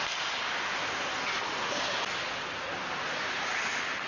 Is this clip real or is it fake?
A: real